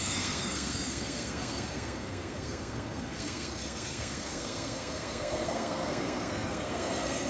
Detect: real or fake fake